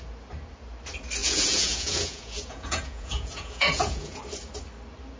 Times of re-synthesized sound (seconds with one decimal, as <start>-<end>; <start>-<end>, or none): 1.2-4.2